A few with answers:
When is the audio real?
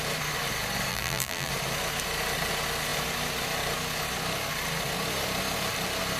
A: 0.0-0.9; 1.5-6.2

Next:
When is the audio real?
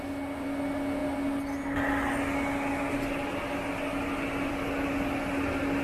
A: 0.0-5.8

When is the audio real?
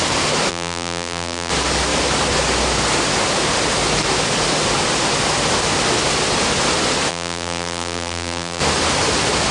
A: 0.0-0.5; 1.5-7.1; 8.6-9.5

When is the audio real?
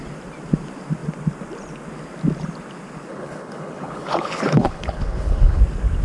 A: 0.0-3.1; 5.6-6.0